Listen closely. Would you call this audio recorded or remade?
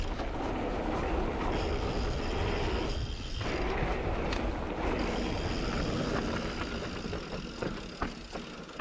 recorded